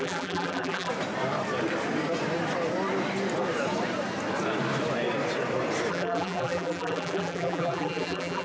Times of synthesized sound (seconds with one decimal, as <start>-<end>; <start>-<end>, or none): 0.0-0.9; 5.9-8.4